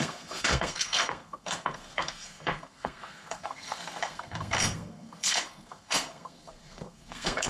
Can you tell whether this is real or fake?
fake